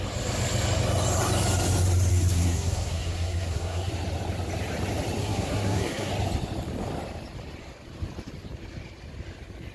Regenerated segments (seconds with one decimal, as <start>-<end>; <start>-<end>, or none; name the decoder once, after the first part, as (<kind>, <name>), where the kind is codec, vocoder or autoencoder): 2.1-3.9 (codec, SNAC); 5.2-6.1